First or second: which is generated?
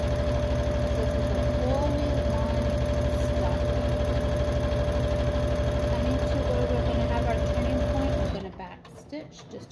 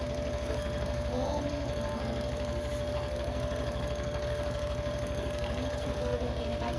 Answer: second